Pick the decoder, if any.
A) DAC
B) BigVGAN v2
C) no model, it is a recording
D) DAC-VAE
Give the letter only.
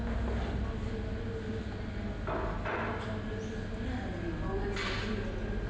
C